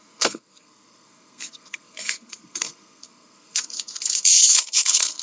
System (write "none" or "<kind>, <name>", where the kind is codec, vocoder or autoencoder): codec, SNAC